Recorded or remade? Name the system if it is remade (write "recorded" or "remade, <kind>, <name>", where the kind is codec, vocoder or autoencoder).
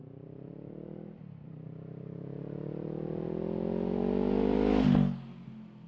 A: recorded